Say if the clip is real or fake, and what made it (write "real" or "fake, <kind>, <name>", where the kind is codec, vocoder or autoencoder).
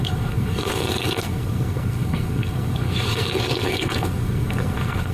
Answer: fake, codec, SNAC